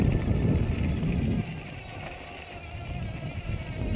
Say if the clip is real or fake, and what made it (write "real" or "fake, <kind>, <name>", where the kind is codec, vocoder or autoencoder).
real